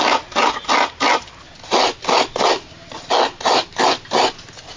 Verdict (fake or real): real